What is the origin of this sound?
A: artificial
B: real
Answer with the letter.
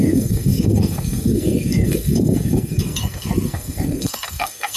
A